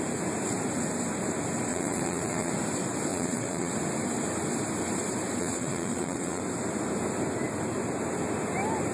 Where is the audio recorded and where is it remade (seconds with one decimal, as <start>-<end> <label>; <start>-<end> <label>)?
0.0-1.7 recorded; 1.7-2.5 remade; 2.5-3.1 recorded; 3.1-3.7 remade; 3.7-5.4 recorded; 5.4-6.4 remade; 6.4-8.9 recorded

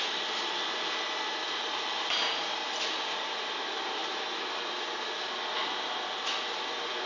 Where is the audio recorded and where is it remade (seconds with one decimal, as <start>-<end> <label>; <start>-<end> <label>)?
0.0-7.1 recorded